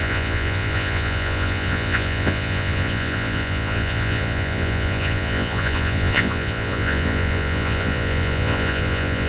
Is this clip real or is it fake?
fake